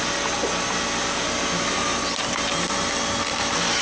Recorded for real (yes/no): no